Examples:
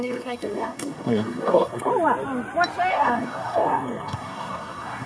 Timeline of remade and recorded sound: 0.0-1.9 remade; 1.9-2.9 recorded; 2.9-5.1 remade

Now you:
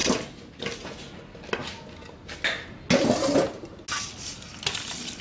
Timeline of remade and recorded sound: 0.0-5.2 recorded